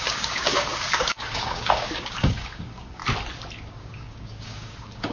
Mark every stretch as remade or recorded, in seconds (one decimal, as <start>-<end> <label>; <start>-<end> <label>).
0.0-3.0 remade; 3.0-3.7 recorded; 3.7-5.1 remade